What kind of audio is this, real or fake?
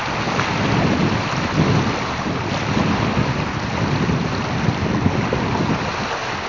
real